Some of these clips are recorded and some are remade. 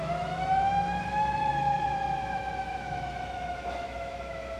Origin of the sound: remade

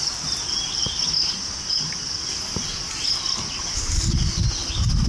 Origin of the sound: recorded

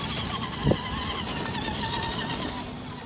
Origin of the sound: recorded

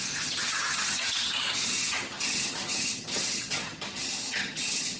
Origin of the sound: remade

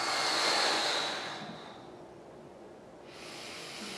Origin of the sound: remade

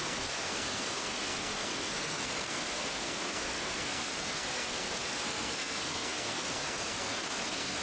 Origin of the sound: remade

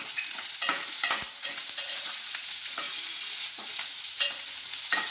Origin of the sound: remade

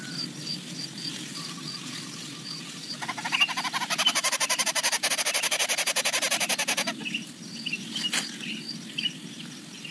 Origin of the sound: recorded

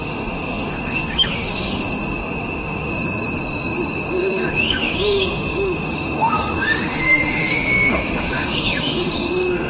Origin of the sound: remade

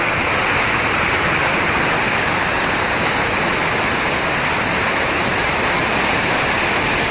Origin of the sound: recorded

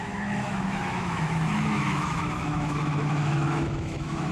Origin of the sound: remade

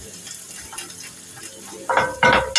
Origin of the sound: recorded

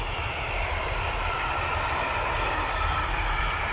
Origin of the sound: remade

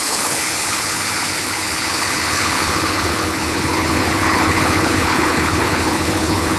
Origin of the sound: remade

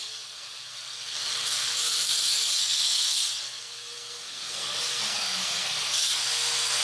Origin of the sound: remade